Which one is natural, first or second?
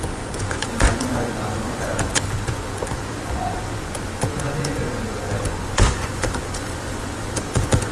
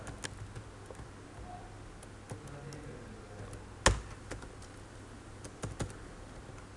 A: second